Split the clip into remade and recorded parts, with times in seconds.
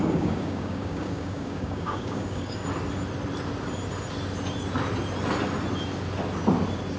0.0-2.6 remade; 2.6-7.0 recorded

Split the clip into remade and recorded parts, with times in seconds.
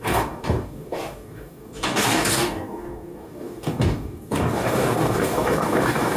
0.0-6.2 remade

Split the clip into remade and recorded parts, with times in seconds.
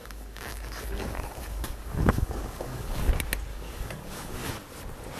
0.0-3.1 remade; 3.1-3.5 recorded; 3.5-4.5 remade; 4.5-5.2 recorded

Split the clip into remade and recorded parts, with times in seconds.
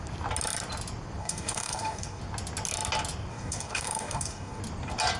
0.0-1.2 recorded; 1.2-2.2 remade; 2.2-3.3 recorded; 3.3-4.6 remade; 4.6-5.2 recorded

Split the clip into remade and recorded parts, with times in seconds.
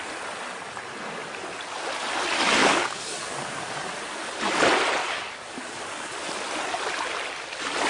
0.0-2.6 recorded; 2.6-3.6 remade; 3.6-5.0 recorded; 5.0-6.1 remade; 6.1-7.9 recorded